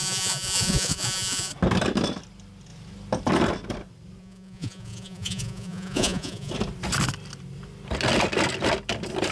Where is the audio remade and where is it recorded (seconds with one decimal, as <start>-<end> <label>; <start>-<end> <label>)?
0.0-1.5 remade; 1.5-4.2 recorded; 4.2-6.5 remade; 6.5-9.3 recorded